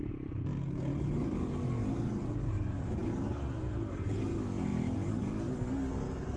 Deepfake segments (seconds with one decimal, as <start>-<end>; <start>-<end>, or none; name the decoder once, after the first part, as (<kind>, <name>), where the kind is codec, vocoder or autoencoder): none

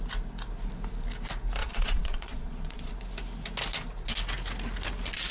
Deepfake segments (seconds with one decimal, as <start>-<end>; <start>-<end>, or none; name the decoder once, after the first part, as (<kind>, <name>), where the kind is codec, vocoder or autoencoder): 1.6-2.9 (vocoder, Vocos)

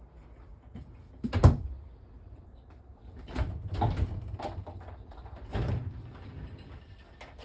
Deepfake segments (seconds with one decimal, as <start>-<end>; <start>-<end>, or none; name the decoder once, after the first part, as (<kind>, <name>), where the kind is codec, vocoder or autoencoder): 0.5-1.1 (vocoder, Vocos)

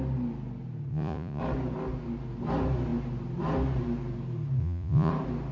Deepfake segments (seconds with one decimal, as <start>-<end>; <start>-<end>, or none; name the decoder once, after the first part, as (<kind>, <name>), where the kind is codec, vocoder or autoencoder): 0.9-1.4 (vocoder, Vocos); 4.6-5.1

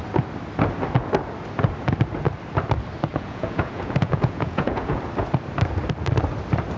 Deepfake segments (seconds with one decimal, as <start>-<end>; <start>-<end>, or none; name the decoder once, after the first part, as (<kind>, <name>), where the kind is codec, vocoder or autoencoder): 3.1-5.0 (vocoder, Vocos)

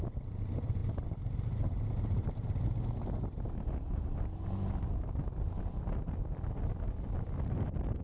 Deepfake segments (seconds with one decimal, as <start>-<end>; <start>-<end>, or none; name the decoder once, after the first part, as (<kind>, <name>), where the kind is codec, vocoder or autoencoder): none

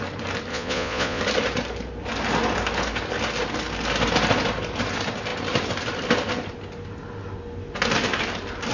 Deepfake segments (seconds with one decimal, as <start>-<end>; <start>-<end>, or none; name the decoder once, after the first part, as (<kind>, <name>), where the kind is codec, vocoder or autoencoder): 0.5-1.2 (vocoder, Vocos)